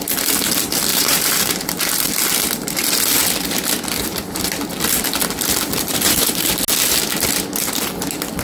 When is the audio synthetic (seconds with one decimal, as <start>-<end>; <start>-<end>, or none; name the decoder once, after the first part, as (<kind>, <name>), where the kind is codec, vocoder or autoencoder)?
0.9-1.6 (vocoder, BigVGAN v2); 5.9-6.5